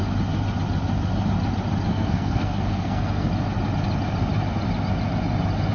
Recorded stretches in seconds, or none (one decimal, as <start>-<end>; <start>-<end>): 0.0-1.9; 3.3-5.7